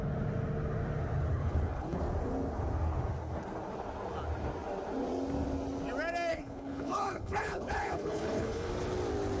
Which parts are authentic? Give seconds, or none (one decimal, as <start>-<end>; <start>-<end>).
0.0-1.3; 2.0-6.3; 8.7-9.4